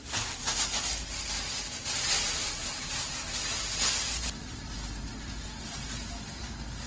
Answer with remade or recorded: recorded